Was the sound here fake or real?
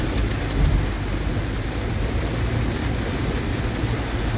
real